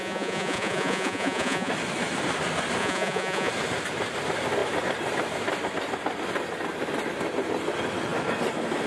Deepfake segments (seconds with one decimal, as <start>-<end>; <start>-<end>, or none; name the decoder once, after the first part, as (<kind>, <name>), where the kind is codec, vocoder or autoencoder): 0.0-1.7 (vocoder, Vocos); 2.8-3.5